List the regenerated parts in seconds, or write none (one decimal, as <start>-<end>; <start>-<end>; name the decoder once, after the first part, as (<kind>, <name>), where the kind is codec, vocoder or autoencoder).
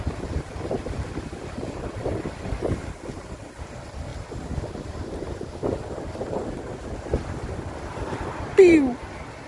0.0-4.1 (vocoder, BigVGAN v2); 6.5-9.5